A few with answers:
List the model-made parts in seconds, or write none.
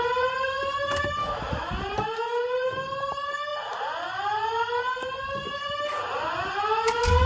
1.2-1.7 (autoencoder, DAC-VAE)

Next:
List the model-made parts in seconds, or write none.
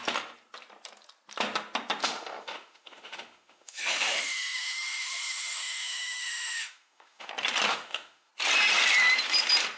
2.0-7.3 (autoencoder, DAC-VAE); 7.7-8.3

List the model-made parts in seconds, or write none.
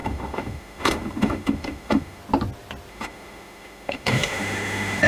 0.0-2.2 (autoencoder, DAC-VAE); 2.9-5.1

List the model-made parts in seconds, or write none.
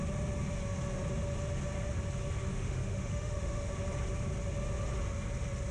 2.5-3.7 (autoencoder, DAC-VAE)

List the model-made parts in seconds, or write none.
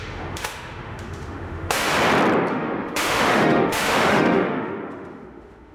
0.0-1.9 (autoencoder, DAC-VAE); 2.5-5.7